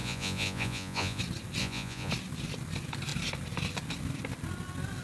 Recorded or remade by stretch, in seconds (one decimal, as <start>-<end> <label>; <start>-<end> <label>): 0.0-1.2 remade; 1.2-1.6 recorded; 1.6-2.1 remade; 2.1-5.0 recorded